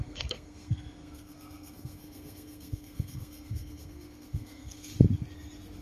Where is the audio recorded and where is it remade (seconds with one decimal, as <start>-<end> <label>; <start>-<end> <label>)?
0.0-4.9 remade; 4.9-5.8 recorded